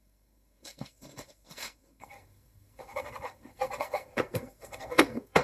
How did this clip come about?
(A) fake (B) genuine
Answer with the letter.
A